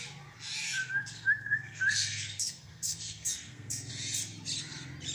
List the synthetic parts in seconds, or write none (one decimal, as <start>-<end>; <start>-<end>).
0.8-3.9